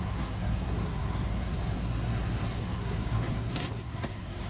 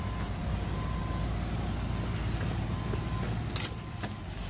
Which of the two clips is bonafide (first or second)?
second